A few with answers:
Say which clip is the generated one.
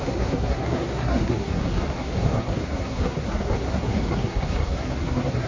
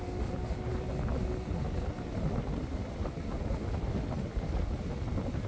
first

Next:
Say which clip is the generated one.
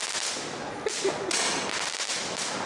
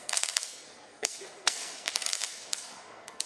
second